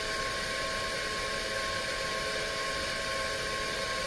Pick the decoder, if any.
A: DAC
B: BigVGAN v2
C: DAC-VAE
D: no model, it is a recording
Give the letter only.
D